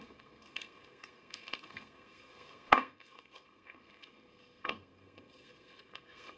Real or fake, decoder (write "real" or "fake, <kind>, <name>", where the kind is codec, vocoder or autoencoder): fake, codec, SNAC